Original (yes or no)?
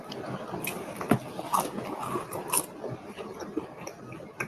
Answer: yes